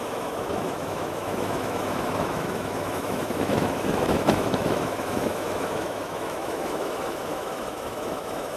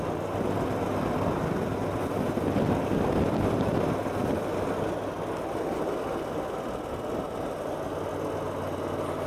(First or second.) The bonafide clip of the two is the second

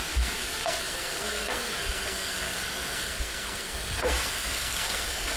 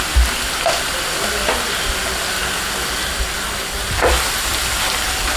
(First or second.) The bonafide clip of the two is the second